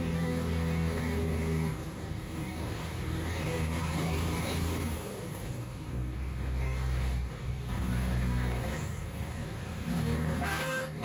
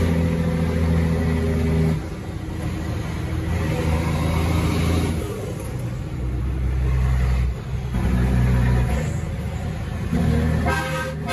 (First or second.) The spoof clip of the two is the first